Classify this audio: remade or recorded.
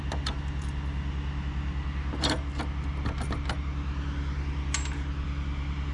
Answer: recorded